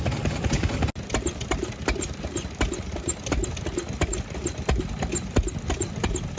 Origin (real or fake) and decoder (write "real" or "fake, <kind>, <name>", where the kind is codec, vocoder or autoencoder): real